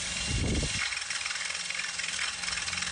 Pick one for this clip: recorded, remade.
recorded